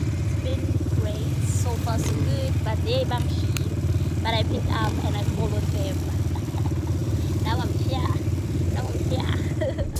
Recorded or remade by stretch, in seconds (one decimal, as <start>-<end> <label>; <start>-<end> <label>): 0.0-0.5 recorded; 0.5-2.1 remade; 2.1-7.0 recorded; 7.0-7.7 remade; 7.7-10.0 recorded